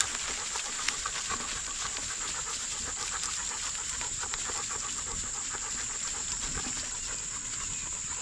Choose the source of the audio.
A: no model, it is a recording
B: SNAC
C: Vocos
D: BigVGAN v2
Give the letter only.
D